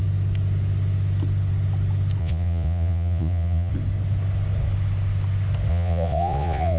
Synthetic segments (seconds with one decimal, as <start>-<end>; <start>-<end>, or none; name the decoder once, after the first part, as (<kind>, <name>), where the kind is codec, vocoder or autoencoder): 2.2-3.7 (vocoder, Vocos); 5.7-6.8